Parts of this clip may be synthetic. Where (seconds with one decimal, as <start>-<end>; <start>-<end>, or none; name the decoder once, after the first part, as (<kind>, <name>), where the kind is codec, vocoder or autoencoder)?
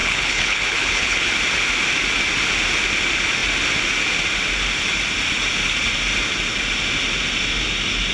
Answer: 0.0-1.3 (codec, HILCodec)